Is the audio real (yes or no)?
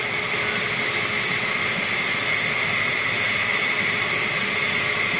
yes